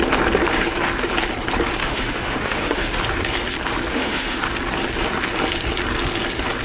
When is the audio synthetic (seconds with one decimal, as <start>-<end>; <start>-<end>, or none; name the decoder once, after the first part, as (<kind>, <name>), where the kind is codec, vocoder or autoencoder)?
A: 1.8-3.0 (autoencoder, DAC-VAE); 3.9-4.4